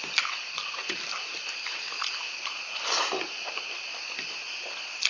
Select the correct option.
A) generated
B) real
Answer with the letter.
B